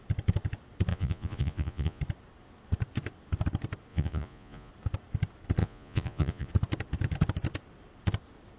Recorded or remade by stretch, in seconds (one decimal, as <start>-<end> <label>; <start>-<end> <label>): 0.0-0.9 recorded; 0.9-2.0 remade; 2.0-3.9 recorded; 3.9-4.7 remade; 4.7-5.6 recorded; 5.6-6.5 remade; 6.5-8.6 recorded